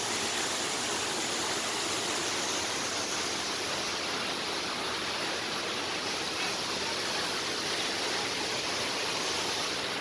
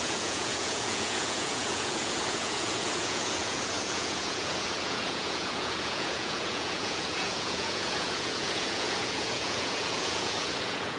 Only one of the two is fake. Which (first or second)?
second